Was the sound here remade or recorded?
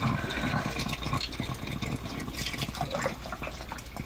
recorded